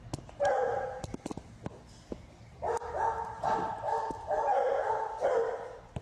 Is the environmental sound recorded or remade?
recorded